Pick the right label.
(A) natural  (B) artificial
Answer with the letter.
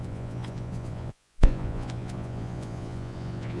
B